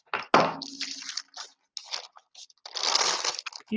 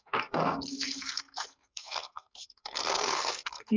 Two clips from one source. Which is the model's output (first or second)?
second